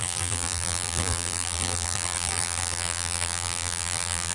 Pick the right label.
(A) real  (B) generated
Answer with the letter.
B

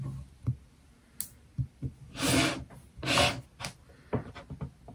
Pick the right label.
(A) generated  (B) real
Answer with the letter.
B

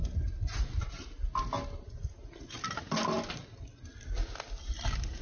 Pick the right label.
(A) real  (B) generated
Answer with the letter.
A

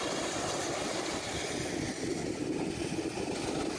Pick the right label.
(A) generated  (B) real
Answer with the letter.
B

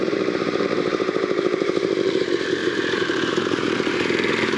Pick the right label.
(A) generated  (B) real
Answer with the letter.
A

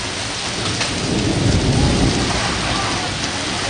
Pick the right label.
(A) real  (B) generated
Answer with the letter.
A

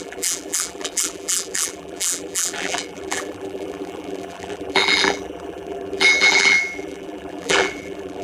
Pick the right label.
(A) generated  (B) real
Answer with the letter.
A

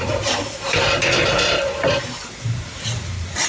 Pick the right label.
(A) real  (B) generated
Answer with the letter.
B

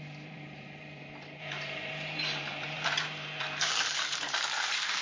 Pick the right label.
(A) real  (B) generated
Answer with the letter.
B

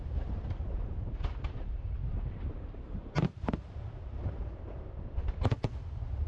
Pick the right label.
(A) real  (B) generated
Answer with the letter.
B